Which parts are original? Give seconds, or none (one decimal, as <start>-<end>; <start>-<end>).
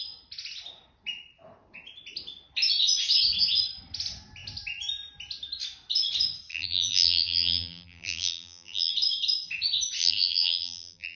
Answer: 0.0-6.5; 8.9-10.0